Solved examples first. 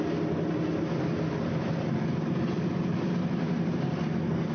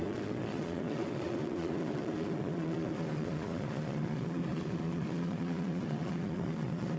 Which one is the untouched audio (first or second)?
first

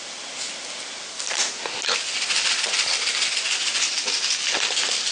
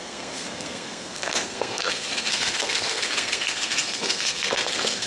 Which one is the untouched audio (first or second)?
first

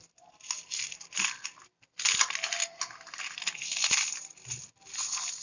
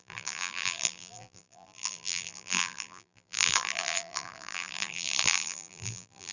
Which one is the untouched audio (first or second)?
first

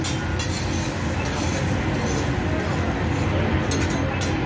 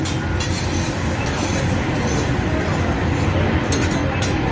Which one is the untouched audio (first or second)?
first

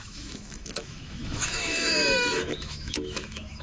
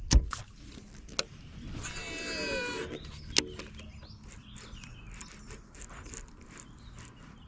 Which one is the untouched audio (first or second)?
second